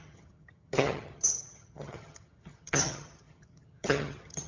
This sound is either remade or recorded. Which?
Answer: remade